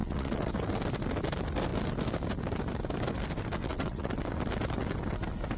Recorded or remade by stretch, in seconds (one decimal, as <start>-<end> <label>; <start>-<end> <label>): 0.0-0.5 remade; 0.5-3.6 recorded; 3.6-4.1 remade; 4.1-5.6 recorded